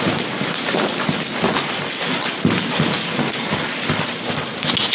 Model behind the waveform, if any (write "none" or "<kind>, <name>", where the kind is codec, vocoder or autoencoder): none